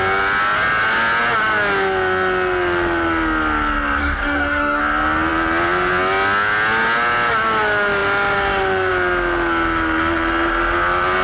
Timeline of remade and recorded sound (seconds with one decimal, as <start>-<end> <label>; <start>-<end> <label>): 0.0-4.0 recorded; 4.0-4.8 remade; 4.8-11.2 recorded